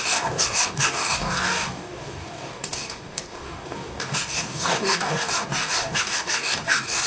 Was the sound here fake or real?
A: fake